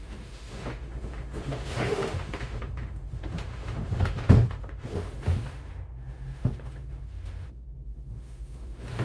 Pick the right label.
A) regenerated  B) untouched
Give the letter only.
A